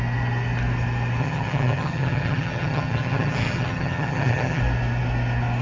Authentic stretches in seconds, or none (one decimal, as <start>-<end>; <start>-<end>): 0.0-1.2; 4.6-5.6